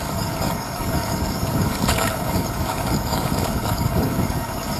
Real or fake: fake